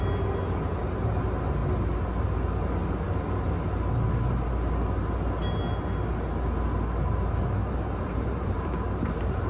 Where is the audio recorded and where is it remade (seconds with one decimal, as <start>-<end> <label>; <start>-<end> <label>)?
0.0-7.6 recorded; 7.6-9.5 remade